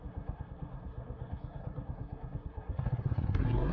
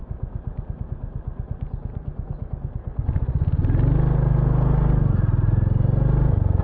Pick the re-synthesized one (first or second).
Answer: first